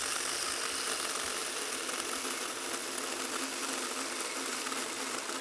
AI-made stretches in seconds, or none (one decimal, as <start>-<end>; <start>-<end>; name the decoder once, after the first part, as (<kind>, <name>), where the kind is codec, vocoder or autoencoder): none